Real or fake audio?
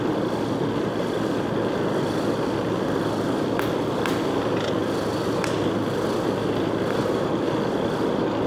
real